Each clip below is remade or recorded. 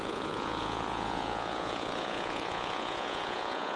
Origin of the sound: remade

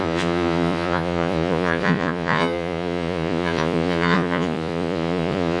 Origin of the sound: remade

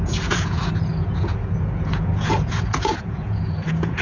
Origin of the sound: remade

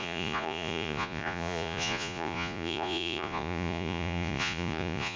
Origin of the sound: remade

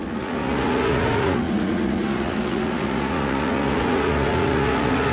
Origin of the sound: remade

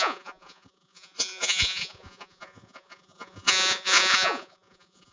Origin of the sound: remade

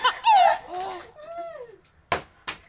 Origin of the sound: recorded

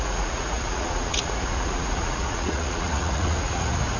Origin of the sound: remade